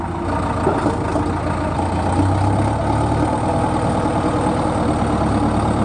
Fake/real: real